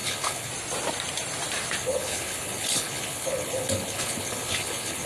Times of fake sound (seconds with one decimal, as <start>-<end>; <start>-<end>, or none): 0.0-0.5; 1.8-5.1